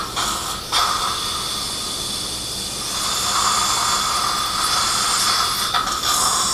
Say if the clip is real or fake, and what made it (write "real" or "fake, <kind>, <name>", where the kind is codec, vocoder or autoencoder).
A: real